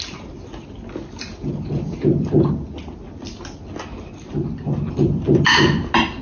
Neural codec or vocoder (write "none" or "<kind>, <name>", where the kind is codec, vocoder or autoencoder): none